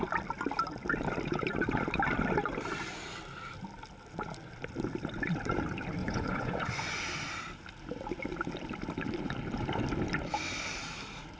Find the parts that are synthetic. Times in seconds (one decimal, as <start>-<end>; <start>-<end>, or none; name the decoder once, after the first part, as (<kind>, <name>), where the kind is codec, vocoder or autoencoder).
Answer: 6.0-7.0 (vocoder, Vocos)